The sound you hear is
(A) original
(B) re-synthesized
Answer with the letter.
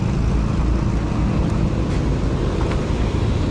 A